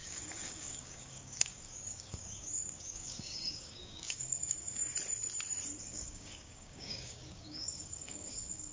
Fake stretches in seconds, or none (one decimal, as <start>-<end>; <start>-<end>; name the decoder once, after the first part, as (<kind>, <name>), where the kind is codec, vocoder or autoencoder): 0.0-4.8 (codec, DAC); 5.8-8.7